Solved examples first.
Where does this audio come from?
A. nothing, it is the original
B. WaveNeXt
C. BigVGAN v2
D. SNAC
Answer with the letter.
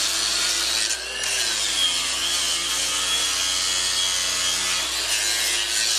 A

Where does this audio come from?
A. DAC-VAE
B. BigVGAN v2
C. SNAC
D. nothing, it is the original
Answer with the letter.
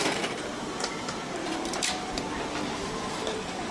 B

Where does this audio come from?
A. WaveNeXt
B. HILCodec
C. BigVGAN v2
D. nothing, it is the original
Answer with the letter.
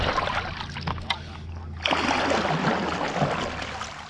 D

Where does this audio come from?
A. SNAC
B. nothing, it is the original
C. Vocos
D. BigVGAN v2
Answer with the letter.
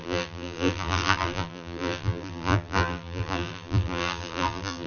D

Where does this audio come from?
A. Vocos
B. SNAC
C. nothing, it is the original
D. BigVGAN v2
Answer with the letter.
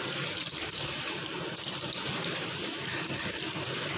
C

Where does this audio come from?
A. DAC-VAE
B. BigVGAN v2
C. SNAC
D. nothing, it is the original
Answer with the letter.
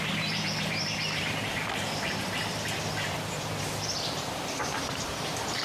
B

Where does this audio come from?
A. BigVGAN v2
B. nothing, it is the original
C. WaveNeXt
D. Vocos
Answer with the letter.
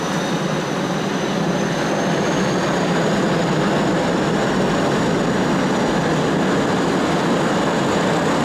B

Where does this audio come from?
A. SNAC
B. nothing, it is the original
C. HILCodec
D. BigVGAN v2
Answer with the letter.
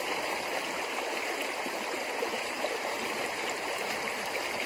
D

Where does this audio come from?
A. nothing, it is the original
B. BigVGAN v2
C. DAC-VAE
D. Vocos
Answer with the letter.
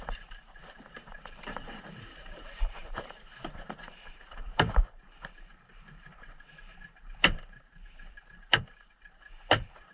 B